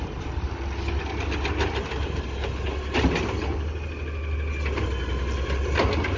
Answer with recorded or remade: recorded